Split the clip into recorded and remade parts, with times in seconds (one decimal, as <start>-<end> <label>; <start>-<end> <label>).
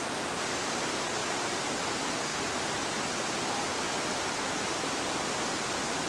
0.0-1.2 recorded; 1.2-1.7 remade; 1.7-6.1 recorded